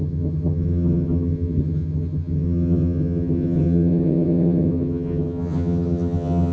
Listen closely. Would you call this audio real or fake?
fake